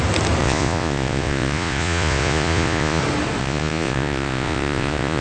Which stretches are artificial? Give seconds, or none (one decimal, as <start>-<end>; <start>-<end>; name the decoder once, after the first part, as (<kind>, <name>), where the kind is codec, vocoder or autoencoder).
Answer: 0.4-3.0 (vocoder, Vocos); 3.4-5.2